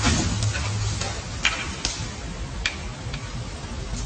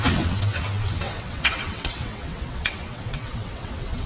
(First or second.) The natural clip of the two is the first